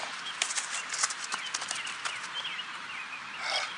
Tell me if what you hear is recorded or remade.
remade